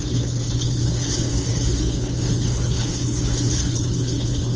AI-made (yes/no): yes